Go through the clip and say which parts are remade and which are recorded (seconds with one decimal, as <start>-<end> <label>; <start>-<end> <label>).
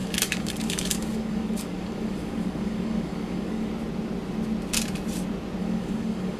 0.0-3.7 remade; 3.7-5.6 recorded; 5.6-6.4 remade